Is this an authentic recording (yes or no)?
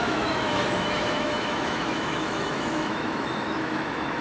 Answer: no